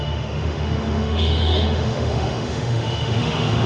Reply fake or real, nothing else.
fake